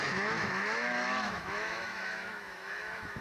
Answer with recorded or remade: remade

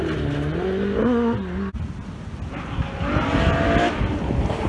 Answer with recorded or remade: recorded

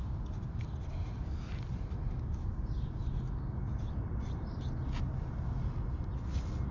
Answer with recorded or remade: recorded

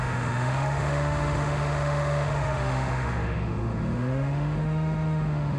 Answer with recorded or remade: remade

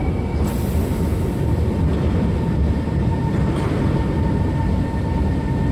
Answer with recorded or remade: recorded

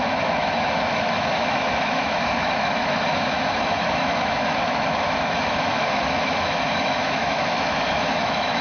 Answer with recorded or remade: remade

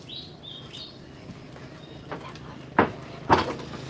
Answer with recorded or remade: recorded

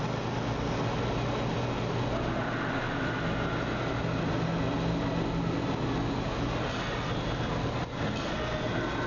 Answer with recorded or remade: recorded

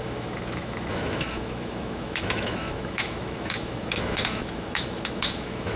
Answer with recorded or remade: remade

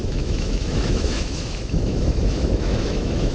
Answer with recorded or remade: remade